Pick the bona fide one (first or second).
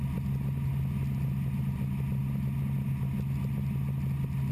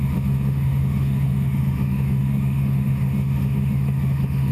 first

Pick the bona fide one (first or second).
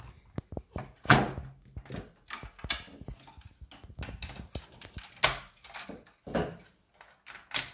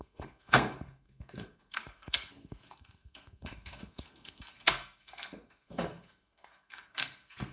first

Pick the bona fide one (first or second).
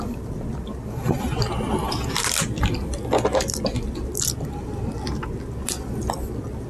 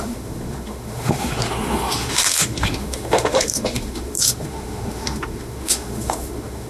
first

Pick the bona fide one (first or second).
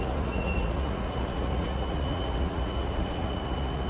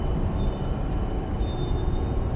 second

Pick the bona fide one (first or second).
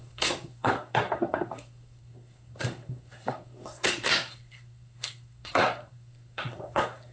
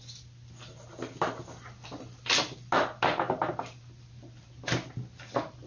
second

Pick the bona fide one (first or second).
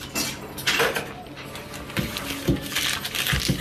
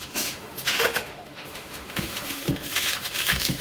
first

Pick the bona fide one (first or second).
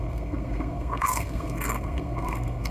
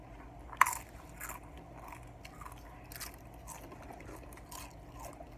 second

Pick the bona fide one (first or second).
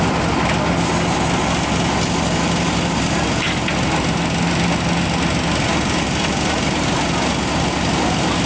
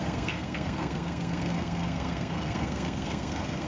first